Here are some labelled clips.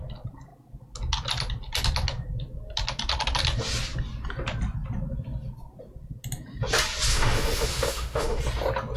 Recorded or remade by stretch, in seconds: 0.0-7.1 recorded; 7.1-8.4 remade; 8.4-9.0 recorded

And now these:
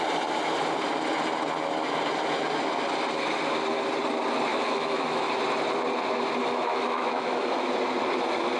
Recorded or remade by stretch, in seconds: 0.0-4.5 recorded; 4.5-5.3 remade; 5.3-6.4 recorded; 6.4-7.7 remade; 7.7-8.6 recorded

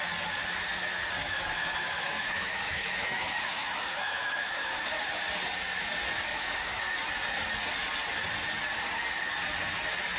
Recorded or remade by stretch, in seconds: 0.0-1.2 recorded; 1.2-5.0 remade; 5.0-6.3 recorded; 6.3-6.8 remade; 6.8-10.2 recorded

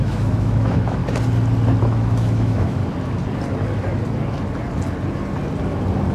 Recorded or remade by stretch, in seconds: 0.0-1.0 remade; 1.0-1.8 recorded; 1.8-2.8 remade; 2.8-6.1 recorded

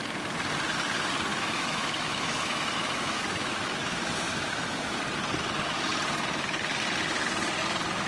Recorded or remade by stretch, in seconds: 0.0-1.3 recorded; 1.3-5.0 remade; 5.0-8.1 recorded